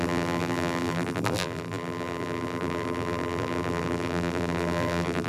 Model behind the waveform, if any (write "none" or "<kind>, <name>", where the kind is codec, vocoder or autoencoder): vocoder, BigVGAN v2